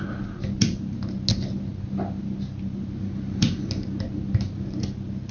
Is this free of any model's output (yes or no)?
yes